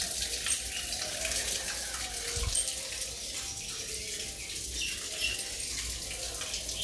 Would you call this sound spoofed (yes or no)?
no